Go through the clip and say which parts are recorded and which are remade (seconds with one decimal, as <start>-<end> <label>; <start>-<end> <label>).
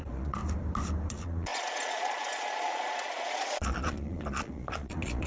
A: 0.0-0.4 remade; 0.4-1.1 recorded; 1.1-5.3 remade